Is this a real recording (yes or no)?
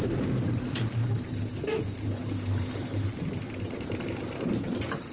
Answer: no